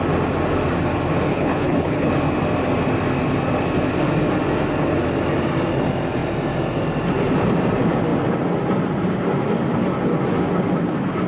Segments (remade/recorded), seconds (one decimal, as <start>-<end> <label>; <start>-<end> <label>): 0.0-1.3 recorded; 1.3-2.1 remade; 2.1-11.3 recorded